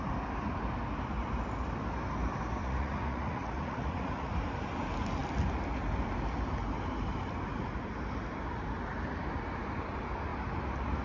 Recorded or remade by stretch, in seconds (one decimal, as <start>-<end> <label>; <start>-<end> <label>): 0.0-2.6 recorded; 2.6-4.3 remade; 4.3-11.0 recorded

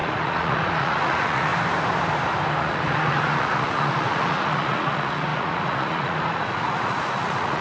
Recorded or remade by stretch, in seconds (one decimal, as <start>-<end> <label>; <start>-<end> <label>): 0.0-1.5 remade; 1.5-2.6 recorded; 2.6-7.6 remade

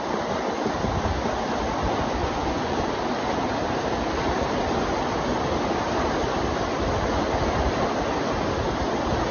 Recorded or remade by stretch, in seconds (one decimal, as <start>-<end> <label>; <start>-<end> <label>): 0.0-2.2 recorded; 2.2-2.9 remade; 2.9-9.3 recorded

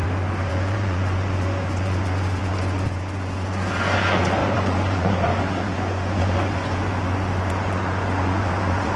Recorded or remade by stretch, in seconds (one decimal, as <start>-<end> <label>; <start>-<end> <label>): 0.0-0.5 recorded; 0.5-9.0 remade

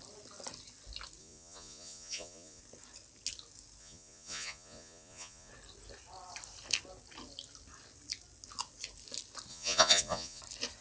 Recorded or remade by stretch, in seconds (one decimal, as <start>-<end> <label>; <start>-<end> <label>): 0.0-1.2 recorded; 1.2-2.6 remade; 2.6-3.8 recorded; 3.8-5.5 remade; 5.5-9.5 recorded; 9.5-10.4 remade; 10.4-10.8 recorded

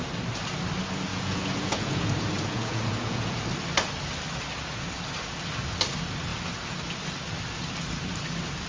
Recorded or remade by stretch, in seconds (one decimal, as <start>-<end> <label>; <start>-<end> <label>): 0.0-1.1 recorded; 1.1-3.4 remade; 3.4-8.7 recorded